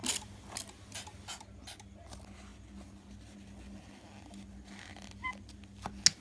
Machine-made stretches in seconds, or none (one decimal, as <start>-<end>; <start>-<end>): none